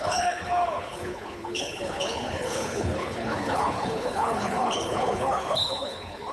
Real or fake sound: fake